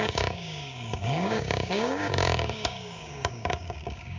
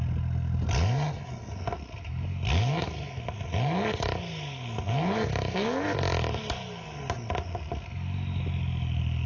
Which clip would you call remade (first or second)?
first